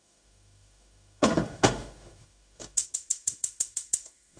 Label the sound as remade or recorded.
remade